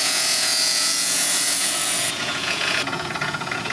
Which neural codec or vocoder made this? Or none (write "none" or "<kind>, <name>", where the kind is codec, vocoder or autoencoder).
vocoder, Vocos